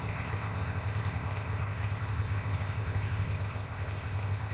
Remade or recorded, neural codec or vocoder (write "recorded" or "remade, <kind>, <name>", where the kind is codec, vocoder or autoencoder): remade, codec, ZipCodec